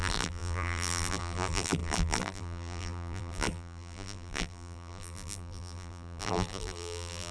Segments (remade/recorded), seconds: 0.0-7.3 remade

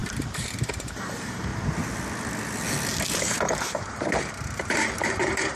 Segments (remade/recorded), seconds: 0.0-1.5 remade; 1.5-3.2 recorded; 3.2-5.6 remade